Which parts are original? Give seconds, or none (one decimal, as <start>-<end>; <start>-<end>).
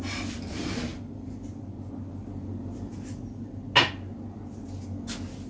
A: 0.0-5.5